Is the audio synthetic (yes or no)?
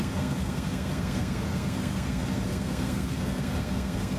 yes